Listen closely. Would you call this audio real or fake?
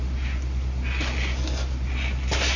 real